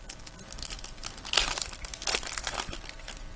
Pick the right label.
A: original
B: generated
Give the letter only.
A